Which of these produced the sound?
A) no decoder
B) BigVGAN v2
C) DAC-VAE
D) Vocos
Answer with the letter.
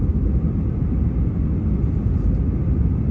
A